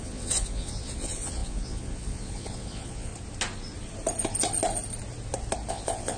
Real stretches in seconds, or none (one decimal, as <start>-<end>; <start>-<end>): 3.1-5.7